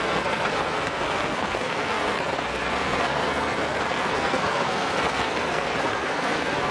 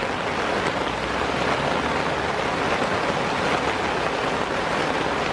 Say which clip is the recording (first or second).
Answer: second